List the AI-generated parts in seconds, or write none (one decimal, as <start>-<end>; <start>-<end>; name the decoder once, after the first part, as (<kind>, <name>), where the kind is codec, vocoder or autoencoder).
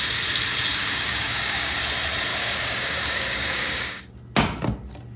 0.7-1.8 (codec, DAC); 2.3-4.0